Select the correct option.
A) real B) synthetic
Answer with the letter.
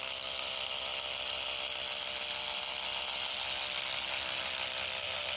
A